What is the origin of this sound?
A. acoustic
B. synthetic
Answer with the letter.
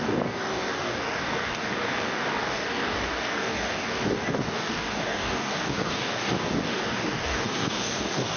B